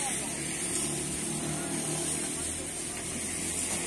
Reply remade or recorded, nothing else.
recorded